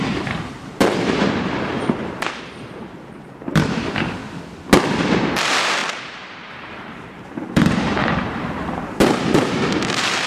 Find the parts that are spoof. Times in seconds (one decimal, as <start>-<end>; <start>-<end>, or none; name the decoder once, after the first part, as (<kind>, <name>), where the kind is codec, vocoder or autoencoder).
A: 0.0-4.2 (vocoder, BigVGAN v2); 5.2-10.3